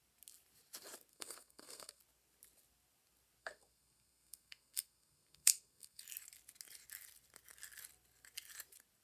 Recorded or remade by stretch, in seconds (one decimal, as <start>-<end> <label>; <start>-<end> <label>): 0.0-1.1 recorded; 1.1-2.0 remade; 2.0-3.4 recorded; 3.4-6.0 remade; 6.0-9.0 recorded